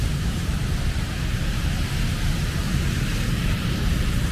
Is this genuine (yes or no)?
no